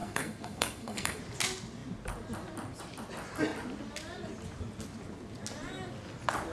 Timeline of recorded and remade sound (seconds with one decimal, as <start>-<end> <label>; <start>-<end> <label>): 0.0-1.2 remade; 1.2-6.5 recorded